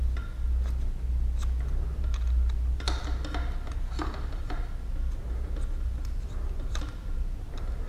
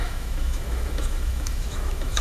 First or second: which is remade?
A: second